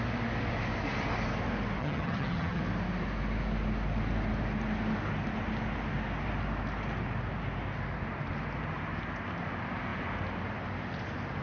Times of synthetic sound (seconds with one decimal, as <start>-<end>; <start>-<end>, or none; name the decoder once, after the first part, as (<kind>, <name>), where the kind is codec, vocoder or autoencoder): 1.8-2.6 (vocoder, HiFi-GAN)